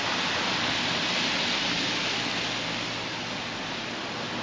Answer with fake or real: real